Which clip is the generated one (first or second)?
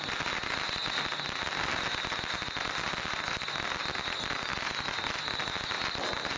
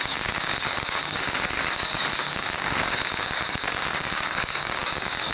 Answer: second